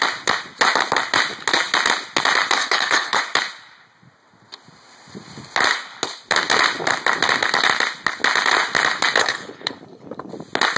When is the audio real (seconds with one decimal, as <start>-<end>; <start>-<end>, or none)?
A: 0.0-2.6; 3.2-9.2; 10.3-10.8